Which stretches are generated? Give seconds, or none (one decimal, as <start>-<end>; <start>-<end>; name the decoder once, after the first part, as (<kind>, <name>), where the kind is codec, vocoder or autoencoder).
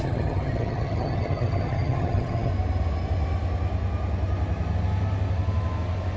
0.0-2.5 (vocoder, HiFi-GAN)